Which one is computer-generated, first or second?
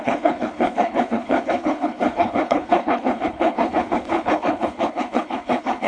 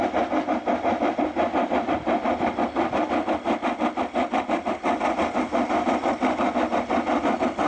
first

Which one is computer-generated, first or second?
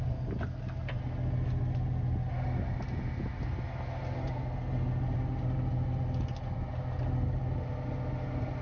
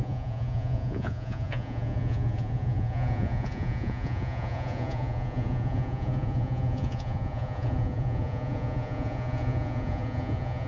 second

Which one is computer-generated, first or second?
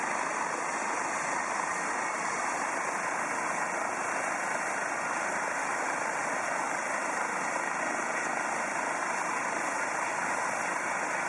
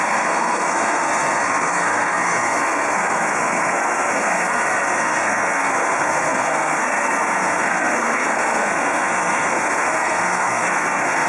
second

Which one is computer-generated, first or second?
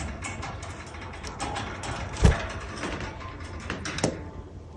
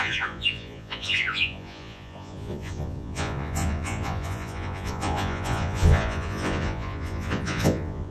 second